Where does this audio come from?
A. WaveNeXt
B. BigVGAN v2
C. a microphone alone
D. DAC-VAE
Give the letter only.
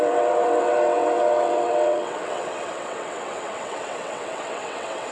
A